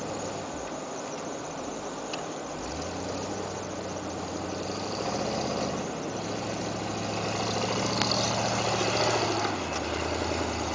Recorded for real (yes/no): yes